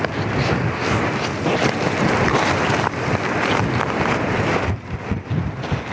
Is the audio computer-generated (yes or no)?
no